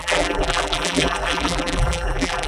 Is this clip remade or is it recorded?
remade